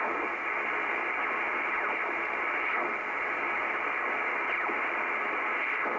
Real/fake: real